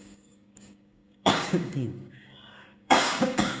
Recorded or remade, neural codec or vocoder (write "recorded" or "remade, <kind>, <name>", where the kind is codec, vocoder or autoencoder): remade, codec, DAC